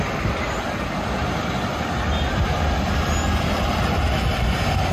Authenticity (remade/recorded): recorded